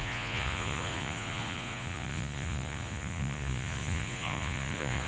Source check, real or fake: fake